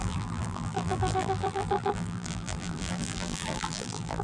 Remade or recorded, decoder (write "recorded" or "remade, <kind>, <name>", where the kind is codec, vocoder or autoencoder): remade, vocoder, BigVGAN v2